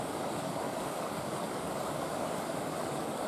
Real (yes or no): no